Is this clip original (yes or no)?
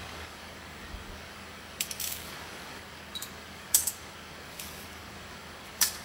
no